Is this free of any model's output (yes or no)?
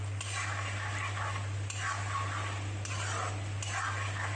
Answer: yes